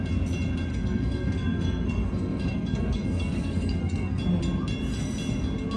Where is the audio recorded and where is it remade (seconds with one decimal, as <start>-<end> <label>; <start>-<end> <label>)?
0.0-0.7 recorded; 0.7-4.2 remade; 4.2-5.8 recorded